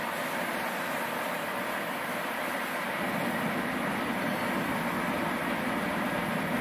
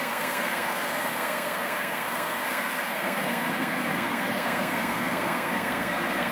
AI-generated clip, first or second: second